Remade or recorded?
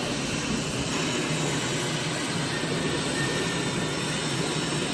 recorded